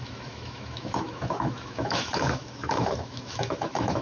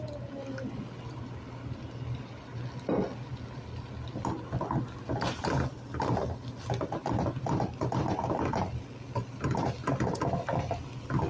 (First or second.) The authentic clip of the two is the second